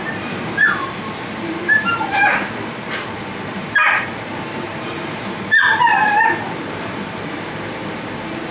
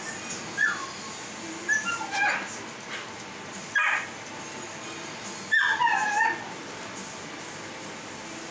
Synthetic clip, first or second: first